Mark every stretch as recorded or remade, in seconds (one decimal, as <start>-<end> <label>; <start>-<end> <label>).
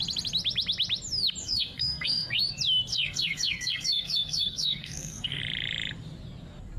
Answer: 0.0-1.4 recorded; 1.4-2.4 remade; 2.4-2.9 recorded; 2.9-5.4 remade; 5.4-6.8 recorded